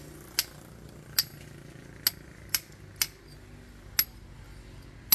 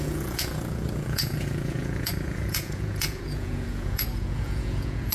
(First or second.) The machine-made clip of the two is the second